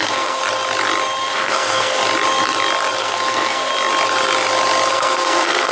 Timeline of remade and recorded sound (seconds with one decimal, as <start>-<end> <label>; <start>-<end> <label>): 0.0-0.4 remade; 0.4-1.2 recorded; 1.2-2.0 remade; 2.0-3.0 recorded; 3.0-3.7 remade; 3.7-4.9 recorded; 4.9-5.7 remade